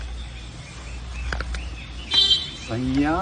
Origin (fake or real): real